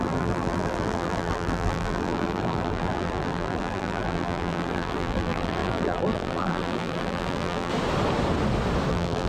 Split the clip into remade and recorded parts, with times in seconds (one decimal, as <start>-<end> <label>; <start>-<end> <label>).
0.0-7.7 remade; 7.7-8.9 recorded; 8.9-9.3 remade